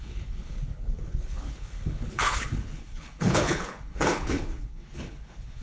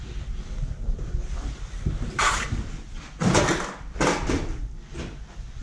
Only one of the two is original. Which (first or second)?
second